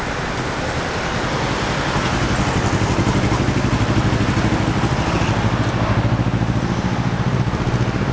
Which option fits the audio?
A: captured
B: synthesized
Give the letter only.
A